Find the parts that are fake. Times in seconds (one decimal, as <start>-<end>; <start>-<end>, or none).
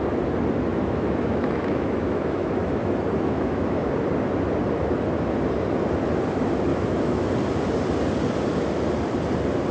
0.7-3.9; 6.7-7.3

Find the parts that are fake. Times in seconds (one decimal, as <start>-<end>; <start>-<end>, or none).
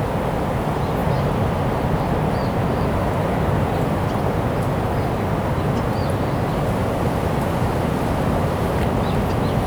none